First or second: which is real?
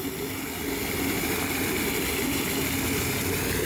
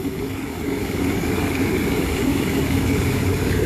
first